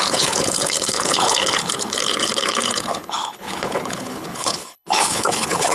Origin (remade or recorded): remade